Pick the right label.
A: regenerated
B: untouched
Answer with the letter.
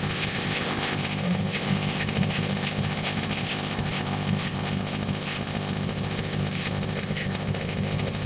A